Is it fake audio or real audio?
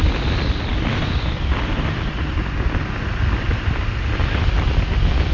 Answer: real